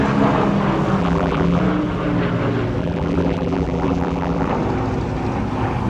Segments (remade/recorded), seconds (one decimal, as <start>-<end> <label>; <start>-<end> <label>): 0.0-1.0 recorded; 1.0-1.6 remade; 1.6-2.8 recorded; 2.8-4.5 remade; 4.5-5.9 recorded